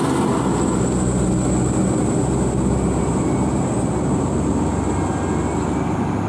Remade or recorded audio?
recorded